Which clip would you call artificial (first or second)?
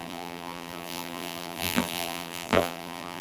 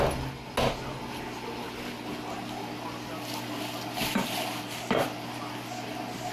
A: first